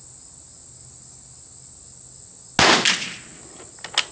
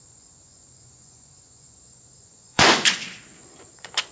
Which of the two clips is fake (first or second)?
second